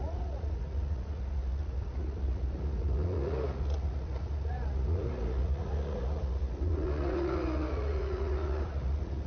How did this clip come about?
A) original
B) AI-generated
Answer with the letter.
B